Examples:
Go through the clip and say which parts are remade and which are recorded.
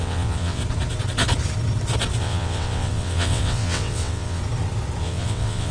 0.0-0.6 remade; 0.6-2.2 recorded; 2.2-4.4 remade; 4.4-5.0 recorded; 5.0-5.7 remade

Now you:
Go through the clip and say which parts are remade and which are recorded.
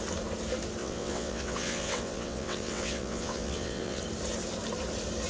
0.0-0.8 recorded; 0.8-4.0 remade; 4.0-5.3 recorded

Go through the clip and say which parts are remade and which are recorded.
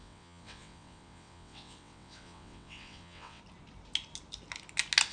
0.0-3.4 remade; 3.4-5.1 recorded